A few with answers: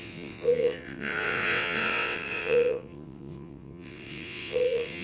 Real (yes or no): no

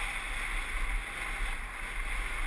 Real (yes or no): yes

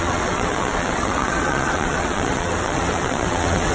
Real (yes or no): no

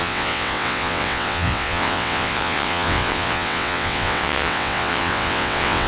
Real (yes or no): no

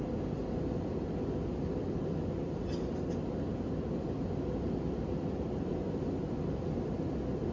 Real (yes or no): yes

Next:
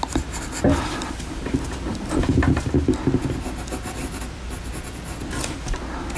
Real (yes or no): yes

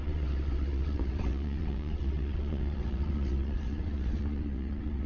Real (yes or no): no